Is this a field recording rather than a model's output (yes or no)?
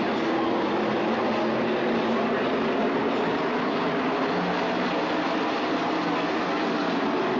yes